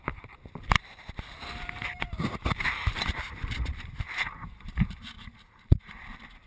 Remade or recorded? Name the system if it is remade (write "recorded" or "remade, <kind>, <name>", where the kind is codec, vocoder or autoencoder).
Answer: remade, vocoder, BigVGAN v2